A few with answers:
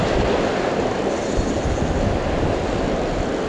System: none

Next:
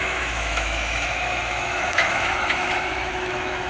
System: autoencoder, DAC-VAE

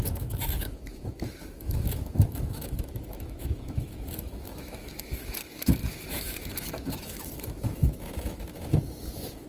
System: autoencoder, DAC-VAE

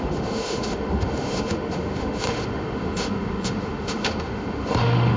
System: autoencoder, DAC-VAE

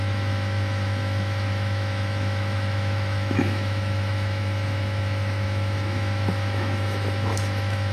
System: autoencoder, DAC-VAE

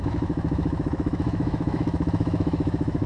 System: autoencoder, DAC-VAE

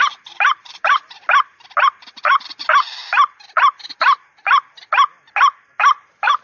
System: none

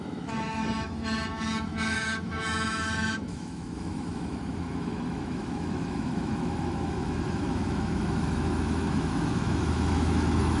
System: autoencoder, DAC-VAE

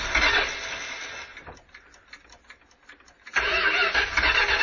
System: none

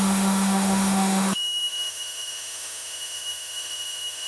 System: autoencoder, DAC-VAE